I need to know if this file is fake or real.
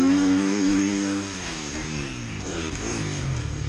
fake